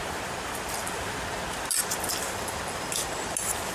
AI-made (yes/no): no